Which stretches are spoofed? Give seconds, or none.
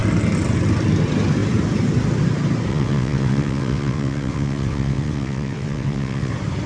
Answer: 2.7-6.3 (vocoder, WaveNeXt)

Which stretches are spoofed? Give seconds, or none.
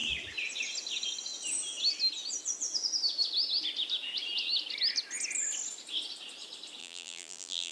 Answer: 6.8-7.7 (vocoder, BigVGAN v2)